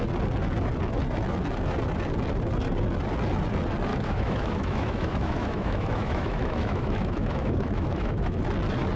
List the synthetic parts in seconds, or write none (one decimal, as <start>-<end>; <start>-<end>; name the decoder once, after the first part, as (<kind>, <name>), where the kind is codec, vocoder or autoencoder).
3.9-8.4 (autoencoder, DAC-VAE)